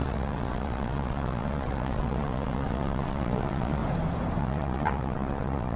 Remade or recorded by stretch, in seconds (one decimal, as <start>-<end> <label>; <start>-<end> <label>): 0.0-3.8 remade; 3.8-4.4 recorded; 4.4-5.8 remade

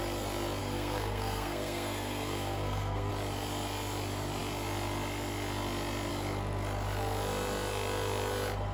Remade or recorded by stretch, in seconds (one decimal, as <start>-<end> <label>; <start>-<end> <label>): 0.0-0.6 recorded; 0.6-3.1 remade; 3.1-8.7 recorded